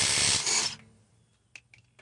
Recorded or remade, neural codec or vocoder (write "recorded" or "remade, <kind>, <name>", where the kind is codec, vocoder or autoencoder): recorded